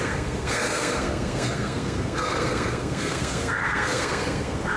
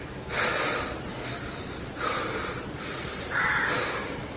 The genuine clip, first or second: second